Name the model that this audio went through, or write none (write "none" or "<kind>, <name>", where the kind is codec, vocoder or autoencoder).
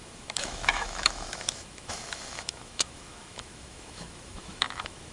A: autoencoder, DAC-VAE